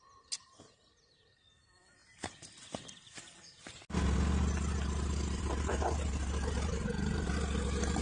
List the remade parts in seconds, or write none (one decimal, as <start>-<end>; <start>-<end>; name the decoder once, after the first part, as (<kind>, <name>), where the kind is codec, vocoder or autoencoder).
none